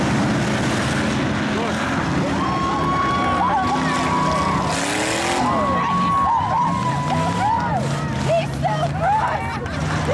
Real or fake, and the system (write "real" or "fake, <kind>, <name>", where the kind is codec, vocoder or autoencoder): real